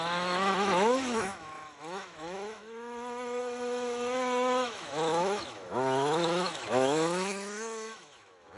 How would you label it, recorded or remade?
remade